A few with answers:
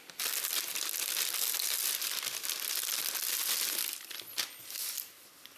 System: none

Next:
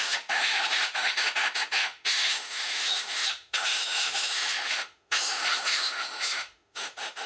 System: autoencoder, DAC-VAE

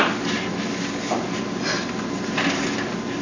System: none